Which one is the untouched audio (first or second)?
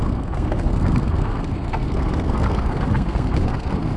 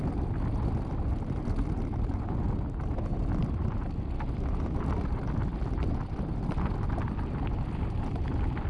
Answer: second